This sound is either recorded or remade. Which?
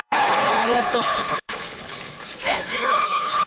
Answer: remade